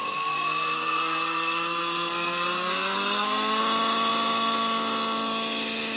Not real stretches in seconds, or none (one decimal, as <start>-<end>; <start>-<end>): 0.0-3.6